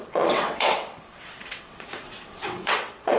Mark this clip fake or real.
fake